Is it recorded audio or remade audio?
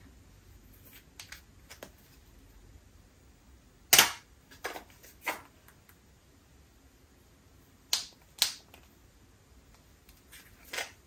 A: recorded